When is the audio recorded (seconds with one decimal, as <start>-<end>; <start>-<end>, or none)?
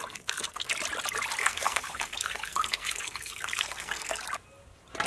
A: 0.7-1.4; 4.2-5.1